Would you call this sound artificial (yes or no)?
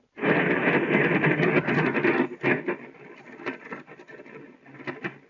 no